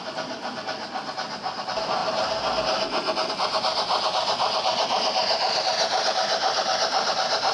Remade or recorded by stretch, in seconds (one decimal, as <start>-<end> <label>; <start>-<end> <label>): 0.0-2.0 remade; 2.0-3.3 recorded; 3.3-7.5 remade